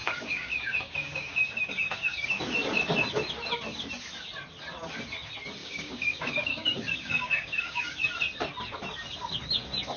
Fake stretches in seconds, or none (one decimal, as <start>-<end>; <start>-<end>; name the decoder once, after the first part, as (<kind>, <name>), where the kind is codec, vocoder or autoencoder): 0.0-2.4 (codec, DAC); 5.6-7.8